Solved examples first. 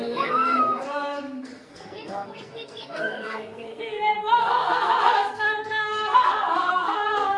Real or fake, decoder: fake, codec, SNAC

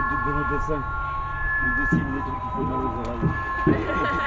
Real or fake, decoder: real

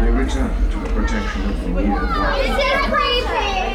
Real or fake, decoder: real